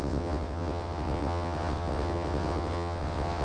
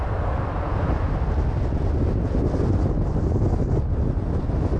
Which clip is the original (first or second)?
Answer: second